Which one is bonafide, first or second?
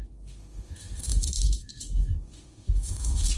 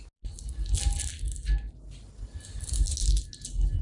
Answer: second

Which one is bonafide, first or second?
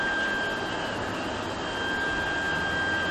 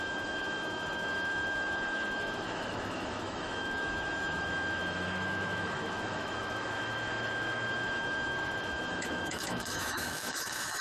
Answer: first